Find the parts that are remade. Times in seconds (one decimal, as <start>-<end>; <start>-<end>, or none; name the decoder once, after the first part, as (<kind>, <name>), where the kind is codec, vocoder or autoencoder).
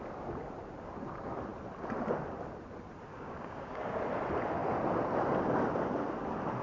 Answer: 3.1-4.0 (codec, DAC)